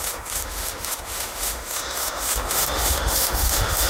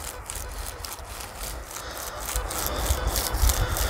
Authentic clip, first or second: second